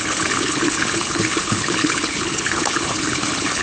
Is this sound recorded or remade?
remade